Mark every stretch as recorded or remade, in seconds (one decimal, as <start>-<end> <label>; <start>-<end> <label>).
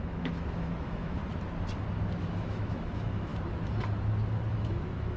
0.0-1.2 remade; 1.2-2.2 recorded; 2.2-3.3 remade; 3.3-4.5 recorded; 4.5-5.2 remade